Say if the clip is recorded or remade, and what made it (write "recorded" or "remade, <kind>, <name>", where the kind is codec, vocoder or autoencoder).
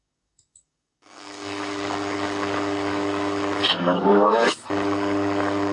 remade, codec, DAC